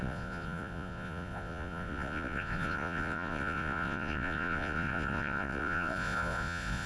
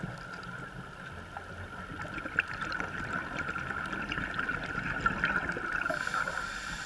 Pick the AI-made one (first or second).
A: first